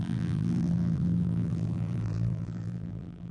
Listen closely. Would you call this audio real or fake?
fake